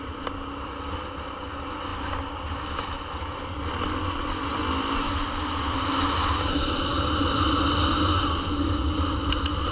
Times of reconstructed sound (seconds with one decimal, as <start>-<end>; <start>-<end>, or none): none